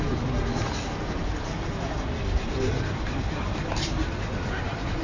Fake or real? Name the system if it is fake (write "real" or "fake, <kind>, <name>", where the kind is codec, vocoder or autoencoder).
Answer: real